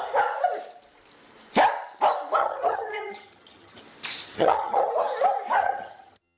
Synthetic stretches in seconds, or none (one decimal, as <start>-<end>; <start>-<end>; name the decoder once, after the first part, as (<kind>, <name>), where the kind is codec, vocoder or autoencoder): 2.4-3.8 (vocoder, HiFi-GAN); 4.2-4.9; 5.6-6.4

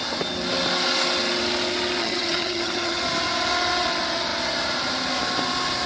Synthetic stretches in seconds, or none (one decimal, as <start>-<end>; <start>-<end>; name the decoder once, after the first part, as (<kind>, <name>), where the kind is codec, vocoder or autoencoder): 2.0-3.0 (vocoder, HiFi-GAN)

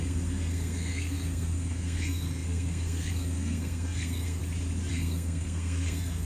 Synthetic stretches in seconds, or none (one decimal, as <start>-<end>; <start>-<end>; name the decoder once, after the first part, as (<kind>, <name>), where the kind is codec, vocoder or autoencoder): 0.0-4.4 (codec, SNAC); 4.9-6.3

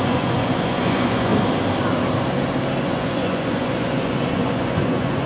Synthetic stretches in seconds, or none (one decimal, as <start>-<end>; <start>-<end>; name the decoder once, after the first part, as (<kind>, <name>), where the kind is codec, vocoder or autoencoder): 0.0-1.3 (vocoder, Vocos); 2.8-5.3

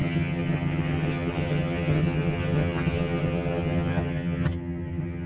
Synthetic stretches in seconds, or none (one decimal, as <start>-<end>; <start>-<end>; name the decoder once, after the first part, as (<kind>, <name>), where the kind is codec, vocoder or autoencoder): 0.0-5.3 (vocoder, HiFi-GAN)

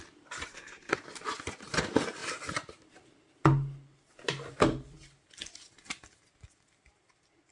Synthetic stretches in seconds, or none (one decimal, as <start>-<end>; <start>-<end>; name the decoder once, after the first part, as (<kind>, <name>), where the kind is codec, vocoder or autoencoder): 0.5-1.0 (codec, SNAC)